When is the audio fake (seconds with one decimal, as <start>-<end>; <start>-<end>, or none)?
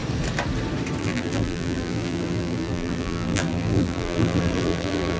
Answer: 1.0-5.2